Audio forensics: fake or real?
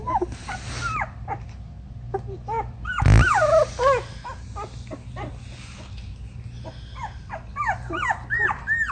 real